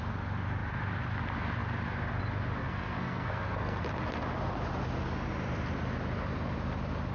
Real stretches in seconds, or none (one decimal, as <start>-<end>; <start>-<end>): 0.0-2.6; 3.8-7.1